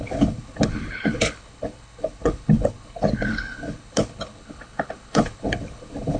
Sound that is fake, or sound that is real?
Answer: fake